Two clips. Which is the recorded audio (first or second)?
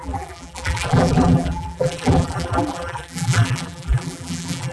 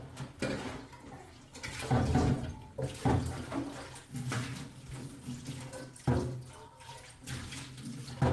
second